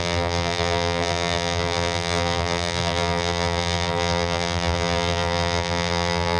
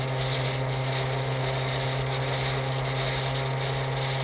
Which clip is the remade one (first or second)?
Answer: first